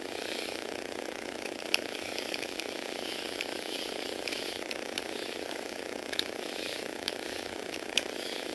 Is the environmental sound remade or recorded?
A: remade